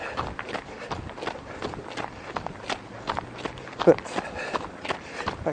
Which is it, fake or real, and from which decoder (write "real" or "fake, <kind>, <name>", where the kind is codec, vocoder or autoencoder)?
real